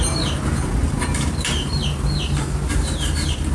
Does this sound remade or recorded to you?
remade